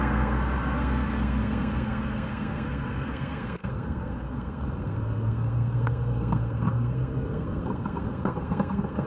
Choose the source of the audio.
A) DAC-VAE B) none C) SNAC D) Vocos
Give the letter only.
C